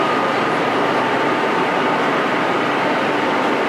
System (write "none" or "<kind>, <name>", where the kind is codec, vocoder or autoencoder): none